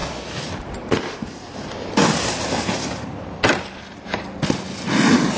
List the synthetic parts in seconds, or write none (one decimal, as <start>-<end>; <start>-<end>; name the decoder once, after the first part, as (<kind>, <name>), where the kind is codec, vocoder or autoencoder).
none